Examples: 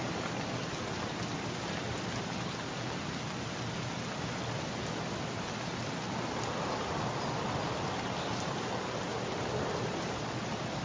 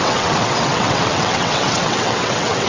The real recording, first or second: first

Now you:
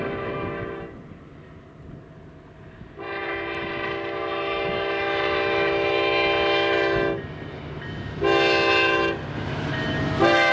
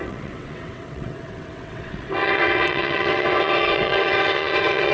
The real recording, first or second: first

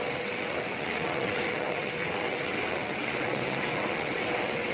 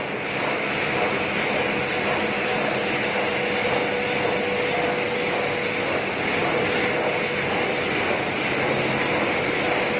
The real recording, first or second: second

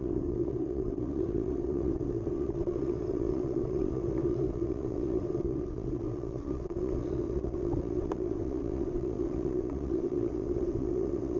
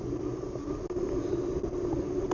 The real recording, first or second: second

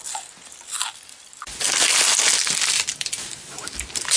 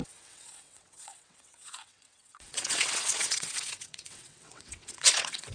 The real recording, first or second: first